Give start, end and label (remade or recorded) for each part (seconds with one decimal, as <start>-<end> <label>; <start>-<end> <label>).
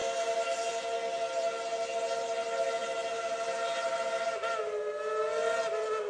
0.0-6.1 recorded